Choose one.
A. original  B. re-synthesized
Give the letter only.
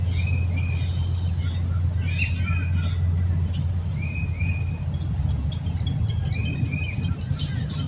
A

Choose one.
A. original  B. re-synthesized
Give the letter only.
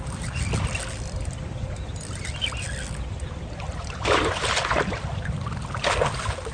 A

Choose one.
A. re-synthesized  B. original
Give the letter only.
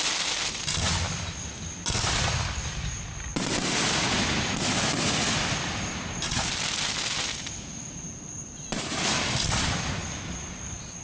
B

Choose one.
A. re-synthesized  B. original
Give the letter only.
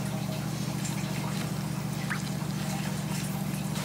B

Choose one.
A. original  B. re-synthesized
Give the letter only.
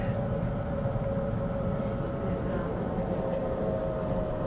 A